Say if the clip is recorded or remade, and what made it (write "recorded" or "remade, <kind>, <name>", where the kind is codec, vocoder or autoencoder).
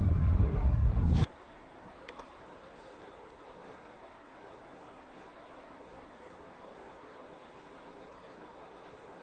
remade, codec, SNAC